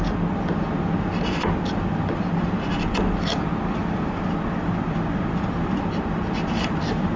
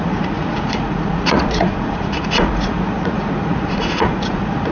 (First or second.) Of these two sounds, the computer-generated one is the second